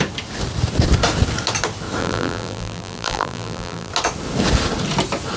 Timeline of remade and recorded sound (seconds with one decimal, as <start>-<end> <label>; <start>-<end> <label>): 0.0-2.0 recorded; 2.0-3.9 remade; 3.9-5.4 recorded